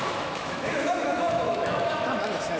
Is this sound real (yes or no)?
no